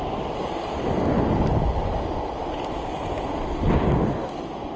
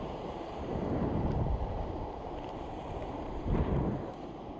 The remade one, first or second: second